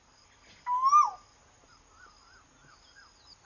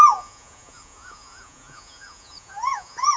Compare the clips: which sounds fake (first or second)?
second